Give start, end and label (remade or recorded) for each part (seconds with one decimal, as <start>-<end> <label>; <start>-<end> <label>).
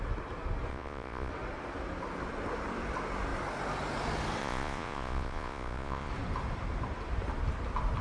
0.0-0.7 recorded; 0.7-1.3 remade; 1.3-4.4 recorded; 4.4-6.1 remade; 6.1-8.0 recorded